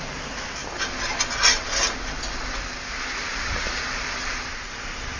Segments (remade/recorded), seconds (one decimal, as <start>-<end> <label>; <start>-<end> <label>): 0.0-3.3 recorded; 3.3-3.8 remade; 3.8-5.2 recorded